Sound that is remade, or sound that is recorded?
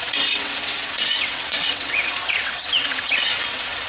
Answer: remade